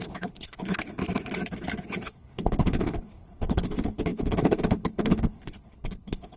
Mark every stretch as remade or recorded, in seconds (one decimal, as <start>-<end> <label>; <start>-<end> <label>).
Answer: 0.0-1.0 remade; 1.0-1.8 recorded; 1.8-6.4 remade